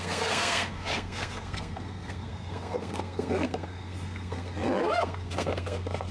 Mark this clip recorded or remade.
remade